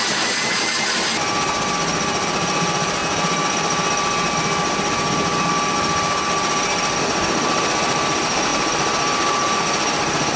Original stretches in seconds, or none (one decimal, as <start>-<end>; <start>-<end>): 0.0-10.4

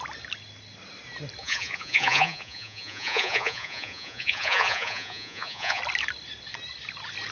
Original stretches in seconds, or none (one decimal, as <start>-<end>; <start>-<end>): 0.0-1.4; 5.8-7.3